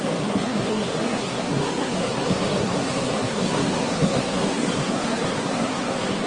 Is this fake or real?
fake